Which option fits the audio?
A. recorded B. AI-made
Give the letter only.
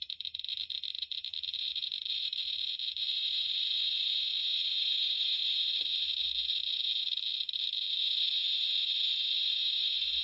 B